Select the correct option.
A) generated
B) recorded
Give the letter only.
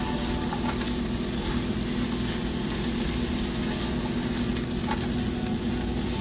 B